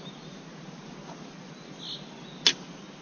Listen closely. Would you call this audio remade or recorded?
recorded